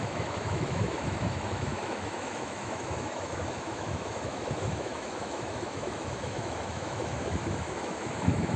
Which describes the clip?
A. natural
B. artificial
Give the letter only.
B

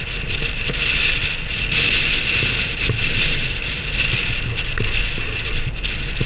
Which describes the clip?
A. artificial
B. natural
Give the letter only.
B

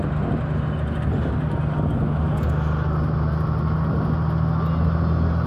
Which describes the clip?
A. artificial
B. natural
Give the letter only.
B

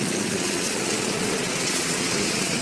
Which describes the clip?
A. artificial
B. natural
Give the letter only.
A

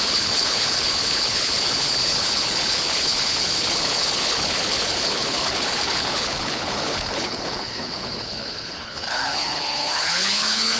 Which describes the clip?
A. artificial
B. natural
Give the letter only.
A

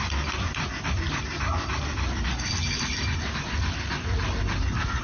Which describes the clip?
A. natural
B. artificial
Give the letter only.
A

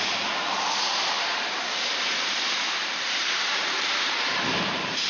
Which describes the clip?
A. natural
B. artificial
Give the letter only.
B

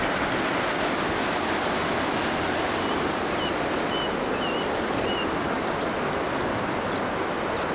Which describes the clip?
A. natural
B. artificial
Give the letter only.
A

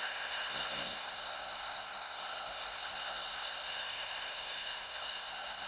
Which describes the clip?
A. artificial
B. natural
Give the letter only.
A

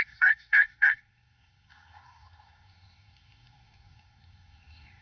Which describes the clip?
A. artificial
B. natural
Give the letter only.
A